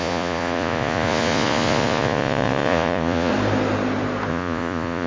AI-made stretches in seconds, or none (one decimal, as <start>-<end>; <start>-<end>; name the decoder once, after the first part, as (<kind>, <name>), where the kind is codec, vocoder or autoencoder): 0.0-3.3 (vocoder, Vocos); 4.3-5.1